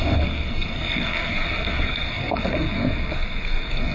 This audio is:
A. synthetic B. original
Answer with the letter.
A